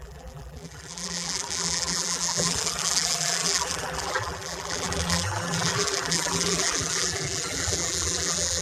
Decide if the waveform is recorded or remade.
remade